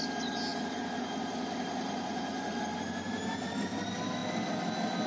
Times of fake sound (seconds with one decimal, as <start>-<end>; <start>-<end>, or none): 0.5-3.3